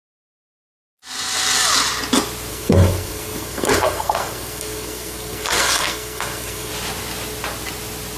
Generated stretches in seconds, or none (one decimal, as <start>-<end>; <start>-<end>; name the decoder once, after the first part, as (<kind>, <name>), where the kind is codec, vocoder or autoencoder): 2.5-6.7 (codec, SNAC)